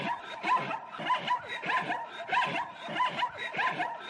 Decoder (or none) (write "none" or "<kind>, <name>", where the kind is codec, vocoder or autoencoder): none